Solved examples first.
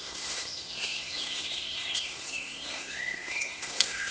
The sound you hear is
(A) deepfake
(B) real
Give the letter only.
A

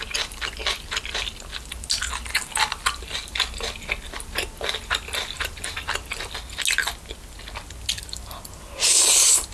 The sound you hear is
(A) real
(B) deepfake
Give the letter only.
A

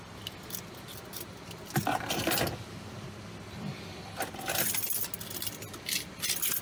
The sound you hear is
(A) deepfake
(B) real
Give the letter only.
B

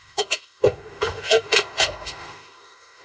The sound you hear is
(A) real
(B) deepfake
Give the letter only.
B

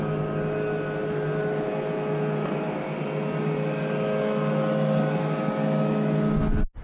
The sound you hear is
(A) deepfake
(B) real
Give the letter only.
B